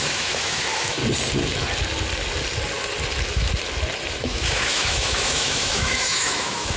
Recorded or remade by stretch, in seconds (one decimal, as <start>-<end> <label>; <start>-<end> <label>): 0.0-1.0 remade; 1.0-4.2 recorded; 4.2-6.8 remade